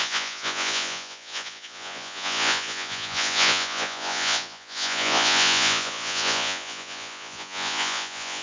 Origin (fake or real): fake